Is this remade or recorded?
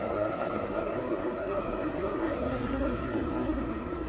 remade